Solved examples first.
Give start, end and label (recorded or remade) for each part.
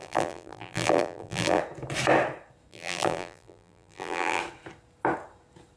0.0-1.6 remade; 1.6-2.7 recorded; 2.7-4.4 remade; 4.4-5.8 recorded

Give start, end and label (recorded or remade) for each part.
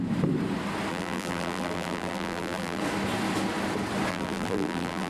0.0-0.9 recorded; 0.9-2.8 remade; 2.8-4.1 recorded; 4.1-5.1 remade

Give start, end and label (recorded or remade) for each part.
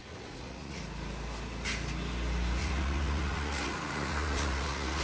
0.0-0.8 remade; 0.8-2.6 recorded; 2.6-5.0 remade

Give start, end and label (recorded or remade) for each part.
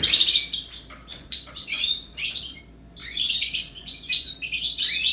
0.0-1.1 recorded; 1.1-2.6 remade; 2.6-3.0 recorded; 3.0-4.3 remade; 4.3-5.1 recorded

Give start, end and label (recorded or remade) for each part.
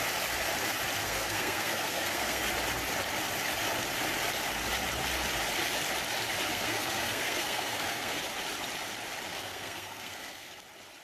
0.0-1.0 recorded; 1.0-2.4 remade; 2.4-6.5 recorded; 6.5-8.2 remade; 8.2-9.3 recorded; 9.3-10.6 remade; 10.6-11.0 recorded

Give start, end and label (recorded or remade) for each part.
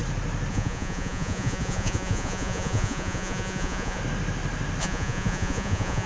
0.0-0.5 recorded; 0.5-4.0 remade; 4.0-4.8 recorded; 4.8-6.1 remade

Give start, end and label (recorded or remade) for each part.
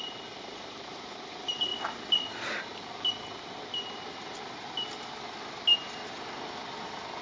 0.0-7.2 recorded